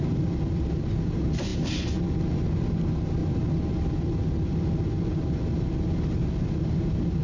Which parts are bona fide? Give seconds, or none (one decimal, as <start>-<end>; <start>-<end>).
0.0-7.2